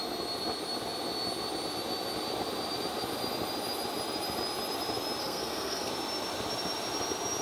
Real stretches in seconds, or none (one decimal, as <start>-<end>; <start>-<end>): 0.0-5.2; 5.9-7.4